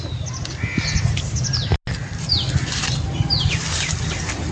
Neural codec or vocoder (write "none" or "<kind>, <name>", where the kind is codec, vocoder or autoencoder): none